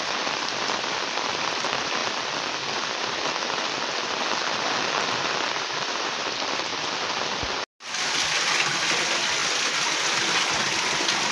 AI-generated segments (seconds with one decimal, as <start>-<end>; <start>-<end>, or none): 0.0-2.0; 4.9-6.7; 8.5-9.4; 10.2-11.3